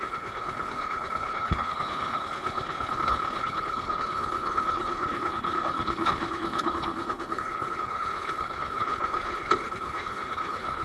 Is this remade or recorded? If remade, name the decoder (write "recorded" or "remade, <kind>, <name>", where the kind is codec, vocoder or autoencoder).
remade, codec, HILCodec